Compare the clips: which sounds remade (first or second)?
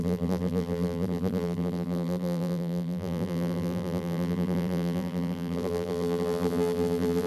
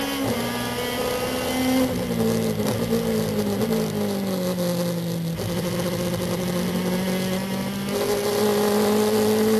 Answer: first